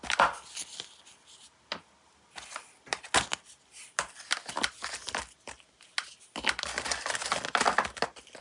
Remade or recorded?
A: recorded